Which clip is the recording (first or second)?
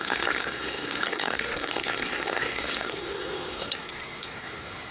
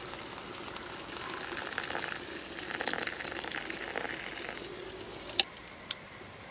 second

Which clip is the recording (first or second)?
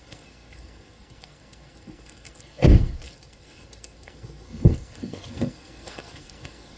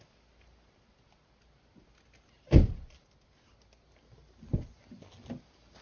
second